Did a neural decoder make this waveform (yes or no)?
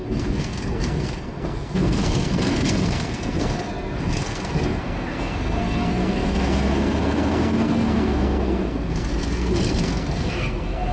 yes